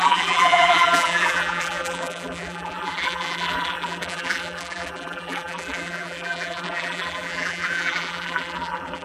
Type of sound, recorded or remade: remade